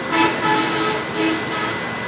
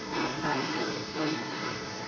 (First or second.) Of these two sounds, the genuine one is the first